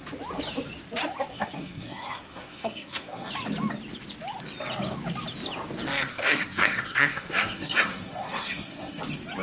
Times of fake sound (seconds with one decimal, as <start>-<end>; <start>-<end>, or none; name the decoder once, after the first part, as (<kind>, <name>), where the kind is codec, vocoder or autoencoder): 1.3-3.3 (codec, SNAC); 6.1-9.0

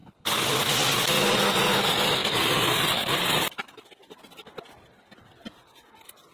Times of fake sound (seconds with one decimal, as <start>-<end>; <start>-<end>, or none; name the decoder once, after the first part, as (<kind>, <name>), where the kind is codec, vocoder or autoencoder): none

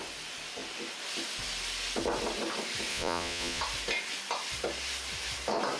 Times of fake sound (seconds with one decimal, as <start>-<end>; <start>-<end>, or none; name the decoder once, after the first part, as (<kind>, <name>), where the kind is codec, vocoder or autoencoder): 2.9-3.6 (vocoder, Vocos)